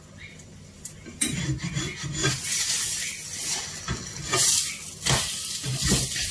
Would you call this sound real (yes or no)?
yes